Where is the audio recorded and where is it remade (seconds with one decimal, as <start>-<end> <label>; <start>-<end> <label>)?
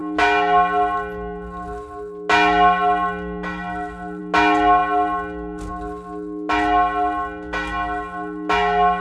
0.0-9.0 recorded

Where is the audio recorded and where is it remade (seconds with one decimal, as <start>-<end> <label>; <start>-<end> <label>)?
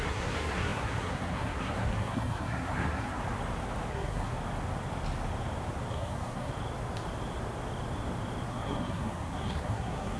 0.0-3.2 remade; 3.2-3.9 recorded; 3.9-4.3 remade; 4.3-5.9 recorded; 5.9-6.5 remade; 6.5-8.5 recorded; 8.5-10.2 remade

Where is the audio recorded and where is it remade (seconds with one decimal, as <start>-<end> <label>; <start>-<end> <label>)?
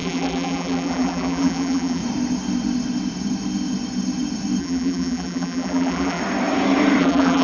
0.0-2.0 remade; 2.0-4.6 recorded; 4.6-6.2 remade; 6.2-7.0 recorded; 7.0-7.4 remade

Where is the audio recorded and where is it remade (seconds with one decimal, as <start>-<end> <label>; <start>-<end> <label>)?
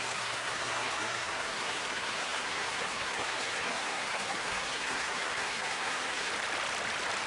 0.0-6.3 remade; 6.3-7.3 recorded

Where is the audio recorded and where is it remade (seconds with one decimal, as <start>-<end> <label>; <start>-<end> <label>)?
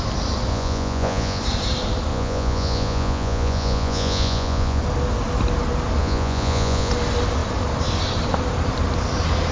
0.0-0.5 recorded; 0.5-1.4 remade; 1.4-2.1 recorded; 2.1-4.8 remade; 4.8-6.0 recorded; 6.0-6.9 remade; 6.9-9.5 recorded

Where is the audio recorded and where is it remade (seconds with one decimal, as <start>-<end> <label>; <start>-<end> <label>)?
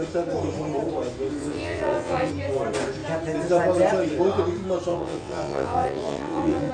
0.0-1.4 recorded; 1.4-2.3 remade; 2.3-4.9 recorded; 4.9-6.7 remade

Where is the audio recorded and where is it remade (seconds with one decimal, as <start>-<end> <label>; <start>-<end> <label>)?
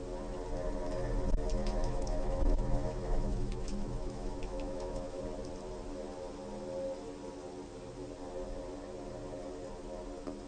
0.0-1.6 recorded; 1.6-5.2 remade; 5.2-10.5 recorded